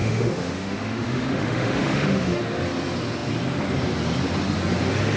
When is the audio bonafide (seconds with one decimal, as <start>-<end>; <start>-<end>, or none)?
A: 2.4-5.2